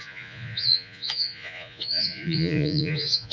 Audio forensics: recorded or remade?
remade